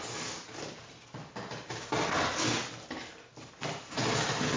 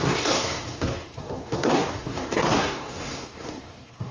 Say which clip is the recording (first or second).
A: first